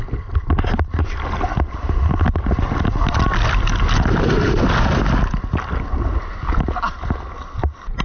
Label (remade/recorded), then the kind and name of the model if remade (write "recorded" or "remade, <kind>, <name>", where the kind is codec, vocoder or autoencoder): recorded